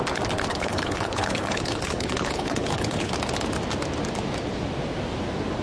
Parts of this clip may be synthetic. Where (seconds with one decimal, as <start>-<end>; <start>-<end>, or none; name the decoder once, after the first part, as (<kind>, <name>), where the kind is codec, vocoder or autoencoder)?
0.5-3.1 (codec, HILCodec)